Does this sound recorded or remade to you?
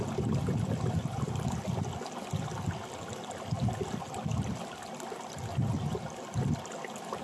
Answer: recorded